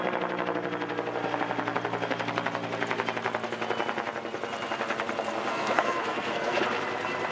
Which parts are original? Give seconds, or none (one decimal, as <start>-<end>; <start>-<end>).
0.0-5.5; 6.6-7.3